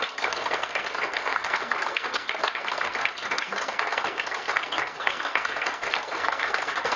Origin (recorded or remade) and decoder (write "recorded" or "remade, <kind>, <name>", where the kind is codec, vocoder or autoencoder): remade, codec, SNAC